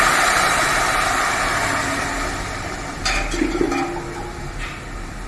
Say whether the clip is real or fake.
real